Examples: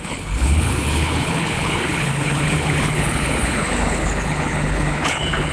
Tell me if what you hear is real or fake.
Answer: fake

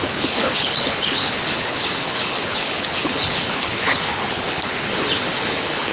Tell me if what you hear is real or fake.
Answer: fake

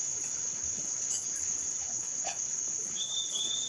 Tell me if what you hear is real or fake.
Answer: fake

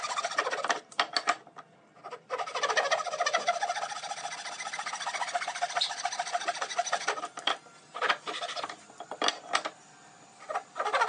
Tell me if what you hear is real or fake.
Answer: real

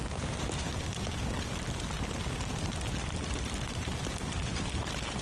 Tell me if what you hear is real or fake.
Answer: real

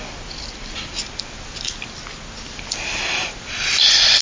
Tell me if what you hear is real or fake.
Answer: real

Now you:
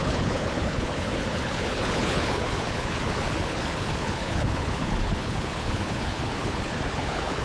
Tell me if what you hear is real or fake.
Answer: fake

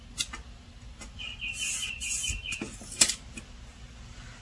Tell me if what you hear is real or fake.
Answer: real